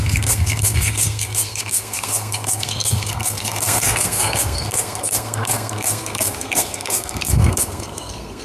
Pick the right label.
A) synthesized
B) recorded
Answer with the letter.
A